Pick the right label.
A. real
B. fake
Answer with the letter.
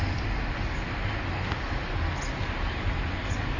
A